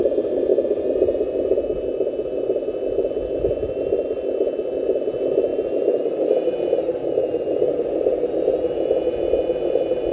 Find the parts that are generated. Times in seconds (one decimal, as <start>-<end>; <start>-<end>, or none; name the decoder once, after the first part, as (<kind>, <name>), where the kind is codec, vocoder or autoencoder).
none